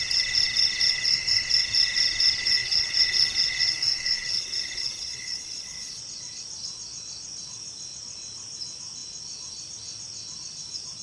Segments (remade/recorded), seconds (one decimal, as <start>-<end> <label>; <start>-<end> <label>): 0.0-2.6 recorded; 2.6-6.0 remade; 6.0-11.0 recorded